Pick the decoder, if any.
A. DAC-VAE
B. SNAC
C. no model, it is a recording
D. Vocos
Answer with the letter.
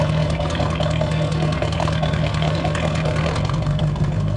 B